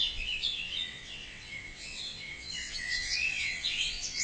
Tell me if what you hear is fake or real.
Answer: fake